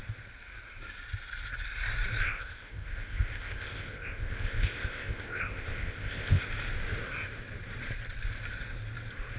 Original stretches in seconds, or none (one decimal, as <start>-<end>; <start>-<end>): 0.0-2.2; 6.5-9.4